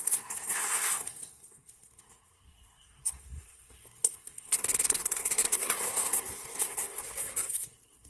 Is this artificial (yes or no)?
yes